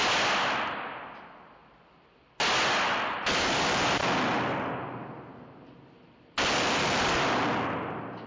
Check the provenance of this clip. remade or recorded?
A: recorded